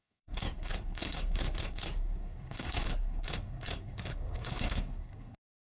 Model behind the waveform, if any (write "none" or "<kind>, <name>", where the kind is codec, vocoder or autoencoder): codec, SNAC